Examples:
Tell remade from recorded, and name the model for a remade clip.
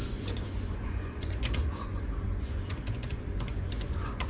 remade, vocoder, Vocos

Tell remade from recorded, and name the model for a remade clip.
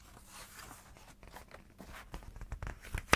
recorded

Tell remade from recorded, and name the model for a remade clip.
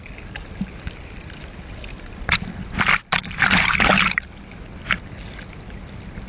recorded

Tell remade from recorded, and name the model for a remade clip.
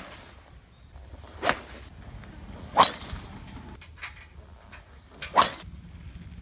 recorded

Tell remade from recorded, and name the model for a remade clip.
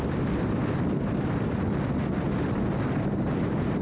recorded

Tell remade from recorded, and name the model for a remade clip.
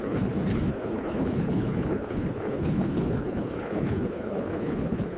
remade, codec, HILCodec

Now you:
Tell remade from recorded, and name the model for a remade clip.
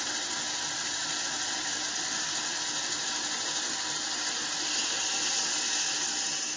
recorded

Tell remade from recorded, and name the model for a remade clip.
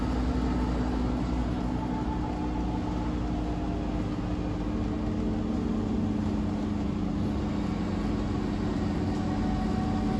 recorded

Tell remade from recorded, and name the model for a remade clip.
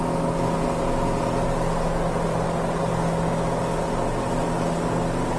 recorded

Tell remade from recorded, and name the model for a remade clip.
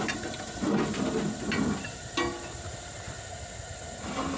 recorded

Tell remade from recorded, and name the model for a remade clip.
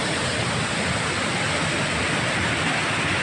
recorded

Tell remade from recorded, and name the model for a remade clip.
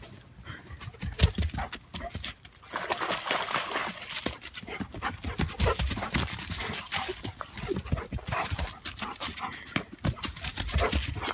recorded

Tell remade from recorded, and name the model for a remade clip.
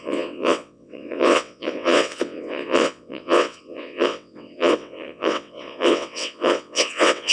remade, vocoder, WaveNeXt